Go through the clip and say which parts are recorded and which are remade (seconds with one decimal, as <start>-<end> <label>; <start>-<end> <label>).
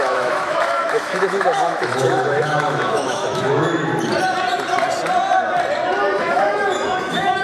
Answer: 0.0-3.9 remade; 3.9-6.2 recorded; 6.2-7.4 remade